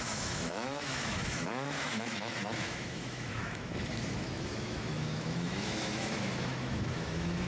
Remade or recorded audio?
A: remade